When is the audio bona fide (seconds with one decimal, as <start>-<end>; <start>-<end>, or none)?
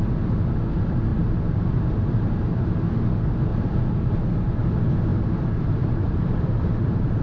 0.0-1.1; 2.7-3.5; 4.2-5.1